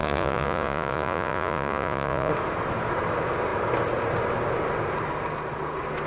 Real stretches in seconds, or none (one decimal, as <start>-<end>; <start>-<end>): 2.3-6.1